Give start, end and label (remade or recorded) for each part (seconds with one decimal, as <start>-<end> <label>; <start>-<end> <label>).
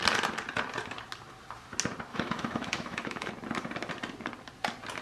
0.0-2.1 recorded; 2.1-3.3 remade; 3.3-5.0 recorded